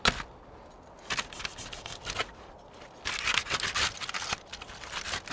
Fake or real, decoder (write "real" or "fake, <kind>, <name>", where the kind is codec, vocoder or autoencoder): real